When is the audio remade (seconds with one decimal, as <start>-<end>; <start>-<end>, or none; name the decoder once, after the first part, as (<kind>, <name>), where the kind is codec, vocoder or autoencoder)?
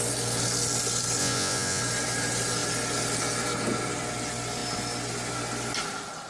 1.2-1.8 (vocoder, Vocos)